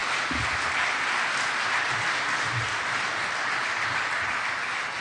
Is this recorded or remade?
recorded